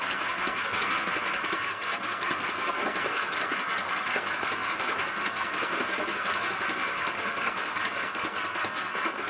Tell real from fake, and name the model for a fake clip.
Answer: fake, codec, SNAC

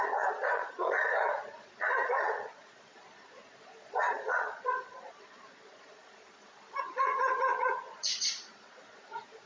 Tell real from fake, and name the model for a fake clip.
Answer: fake, vocoder, Vocos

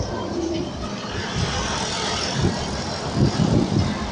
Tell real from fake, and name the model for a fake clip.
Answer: real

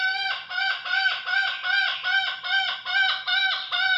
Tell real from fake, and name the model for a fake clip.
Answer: real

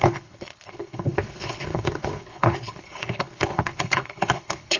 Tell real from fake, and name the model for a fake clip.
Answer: fake, codec, HILCodec